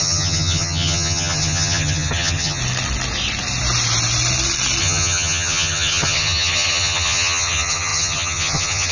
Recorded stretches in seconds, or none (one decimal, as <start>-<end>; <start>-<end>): 2.6-4.8